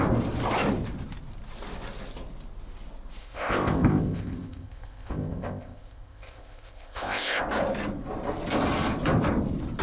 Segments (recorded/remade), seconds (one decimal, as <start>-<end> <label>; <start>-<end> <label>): 0.0-3.2 recorded; 3.2-7.4 remade; 7.4-9.8 recorded